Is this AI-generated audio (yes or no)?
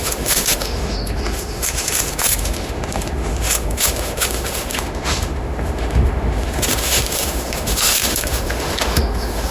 yes